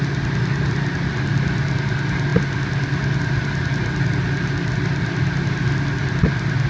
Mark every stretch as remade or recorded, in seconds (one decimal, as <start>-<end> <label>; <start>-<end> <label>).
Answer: 0.0-6.7 recorded